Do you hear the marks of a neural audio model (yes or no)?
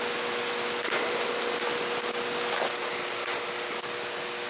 no